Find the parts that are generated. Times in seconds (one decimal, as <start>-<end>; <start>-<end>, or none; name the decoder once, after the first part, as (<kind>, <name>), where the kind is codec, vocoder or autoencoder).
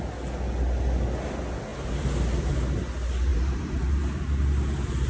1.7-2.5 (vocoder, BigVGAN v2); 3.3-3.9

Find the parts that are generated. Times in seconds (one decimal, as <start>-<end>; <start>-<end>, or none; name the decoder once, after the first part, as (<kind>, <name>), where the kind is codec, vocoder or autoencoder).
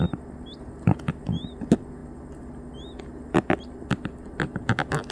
none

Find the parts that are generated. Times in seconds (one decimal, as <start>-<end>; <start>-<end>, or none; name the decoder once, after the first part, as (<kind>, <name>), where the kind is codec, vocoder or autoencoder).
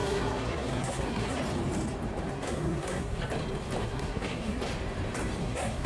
0.0-1.4 (codec, SNAC); 2.3-3.2; 3.8-4.6; 5.4-5.9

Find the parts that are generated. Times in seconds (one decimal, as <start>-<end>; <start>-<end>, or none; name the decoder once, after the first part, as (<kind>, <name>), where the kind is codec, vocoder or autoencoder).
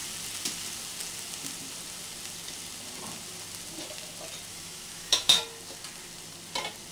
4.5-5.4 (autoencoder, DAC-VAE)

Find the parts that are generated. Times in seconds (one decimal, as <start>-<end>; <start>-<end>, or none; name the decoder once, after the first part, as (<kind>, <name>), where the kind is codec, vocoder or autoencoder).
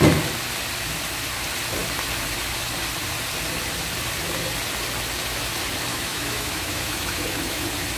5.9-7.6 (autoencoder, DAC-VAE)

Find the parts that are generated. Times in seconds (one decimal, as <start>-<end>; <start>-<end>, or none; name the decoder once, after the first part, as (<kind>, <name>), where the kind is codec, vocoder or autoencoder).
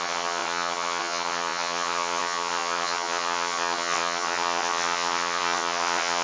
0.0-6.2 (vocoder, HiFi-GAN)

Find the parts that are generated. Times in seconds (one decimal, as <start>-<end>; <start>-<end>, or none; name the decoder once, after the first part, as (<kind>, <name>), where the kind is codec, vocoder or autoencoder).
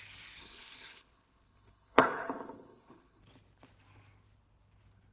0.4-3.2 (codec, HILCodec)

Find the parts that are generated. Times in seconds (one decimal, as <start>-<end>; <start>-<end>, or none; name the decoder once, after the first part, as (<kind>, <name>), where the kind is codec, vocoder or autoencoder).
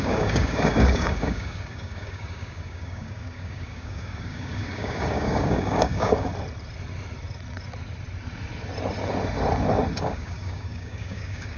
0.0-6.3 (codec, DAC); 10.0-11.6